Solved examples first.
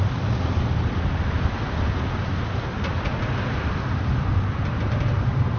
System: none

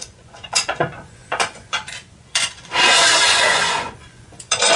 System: vocoder, Vocos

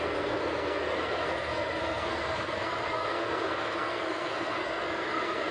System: codec, SNAC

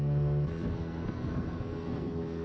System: codec, SNAC